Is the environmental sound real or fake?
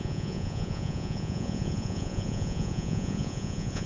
fake